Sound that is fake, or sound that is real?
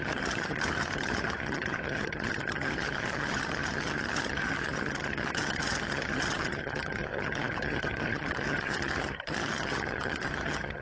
fake